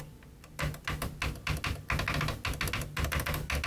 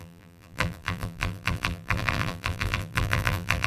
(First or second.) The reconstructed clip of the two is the second